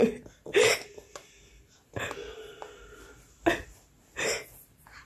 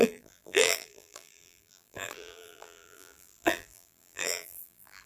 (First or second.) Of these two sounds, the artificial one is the second